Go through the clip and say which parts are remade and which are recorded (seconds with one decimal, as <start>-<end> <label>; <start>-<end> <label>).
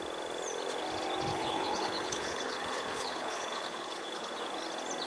0.0-1.3 recorded; 1.3-4.4 remade; 4.4-5.1 recorded